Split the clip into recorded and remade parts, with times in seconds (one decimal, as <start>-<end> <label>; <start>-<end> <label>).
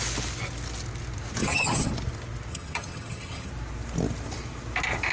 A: 0.0-1.4 recorded; 1.4-1.9 remade; 1.9-2.5 recorded; 2.5-3.5 remade; 3.5-5.1 recorded